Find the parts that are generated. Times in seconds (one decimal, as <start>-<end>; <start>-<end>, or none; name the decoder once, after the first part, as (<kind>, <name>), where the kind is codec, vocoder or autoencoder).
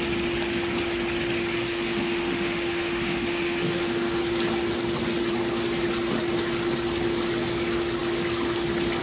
1.7-4.2 (autoencoder, DAC-VAE)